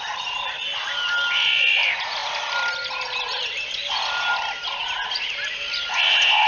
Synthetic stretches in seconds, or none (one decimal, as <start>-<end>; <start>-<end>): none